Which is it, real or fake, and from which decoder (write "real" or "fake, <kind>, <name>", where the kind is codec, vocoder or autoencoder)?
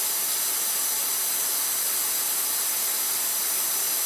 real